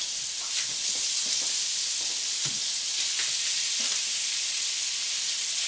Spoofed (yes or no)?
no